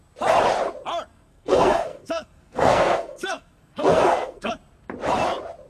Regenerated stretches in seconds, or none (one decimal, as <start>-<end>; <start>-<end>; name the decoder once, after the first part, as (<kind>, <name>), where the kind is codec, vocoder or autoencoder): 1.1-4.5 (codec, SNAC)